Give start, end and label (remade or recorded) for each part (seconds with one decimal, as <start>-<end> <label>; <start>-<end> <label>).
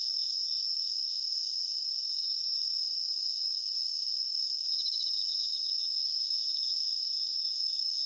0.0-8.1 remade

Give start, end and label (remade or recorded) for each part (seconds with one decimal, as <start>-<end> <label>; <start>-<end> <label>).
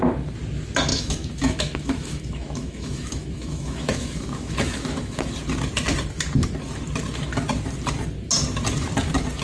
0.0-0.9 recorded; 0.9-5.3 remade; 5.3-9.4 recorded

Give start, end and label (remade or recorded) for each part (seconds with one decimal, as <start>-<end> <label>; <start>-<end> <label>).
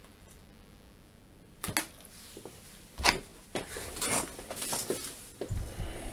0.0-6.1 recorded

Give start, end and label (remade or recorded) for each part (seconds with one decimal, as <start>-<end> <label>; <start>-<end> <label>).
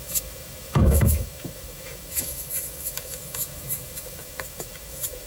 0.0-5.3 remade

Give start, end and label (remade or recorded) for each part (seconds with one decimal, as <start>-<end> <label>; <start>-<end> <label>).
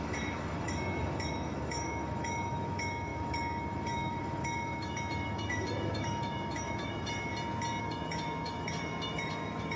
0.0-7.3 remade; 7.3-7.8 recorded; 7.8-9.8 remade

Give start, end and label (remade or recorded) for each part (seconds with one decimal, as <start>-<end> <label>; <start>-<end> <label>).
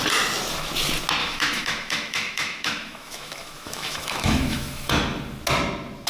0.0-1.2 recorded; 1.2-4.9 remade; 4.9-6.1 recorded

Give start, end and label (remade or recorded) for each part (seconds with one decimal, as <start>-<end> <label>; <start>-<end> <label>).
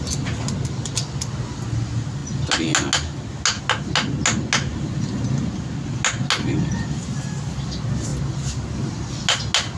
0.0-9.8 recorded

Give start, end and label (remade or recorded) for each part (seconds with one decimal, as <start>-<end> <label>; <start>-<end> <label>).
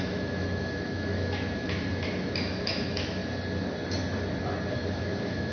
0.0-3.2 remade; 3.2-4.7 recorded; 4.7-5.5 remade